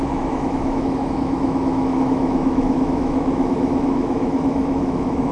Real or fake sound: fake